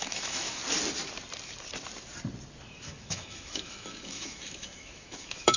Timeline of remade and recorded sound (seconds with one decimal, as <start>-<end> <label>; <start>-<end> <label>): 0.0-0.6 remade; 0.6-2.8 recorded; 2.8-5.6 remade